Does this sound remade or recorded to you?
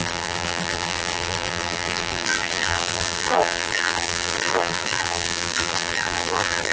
remade